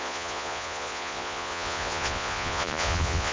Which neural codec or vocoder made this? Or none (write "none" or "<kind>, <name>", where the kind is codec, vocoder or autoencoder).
vocoder, Vocos